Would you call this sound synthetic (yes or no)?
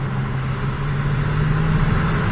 no